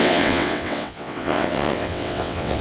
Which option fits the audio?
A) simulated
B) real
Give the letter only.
A